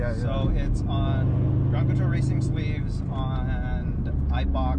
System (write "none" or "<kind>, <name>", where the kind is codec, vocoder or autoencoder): none